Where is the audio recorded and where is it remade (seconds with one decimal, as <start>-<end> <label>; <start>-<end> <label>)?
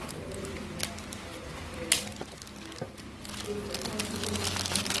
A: 0.0-5.0 recorded